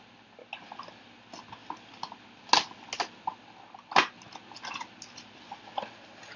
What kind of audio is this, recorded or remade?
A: recorded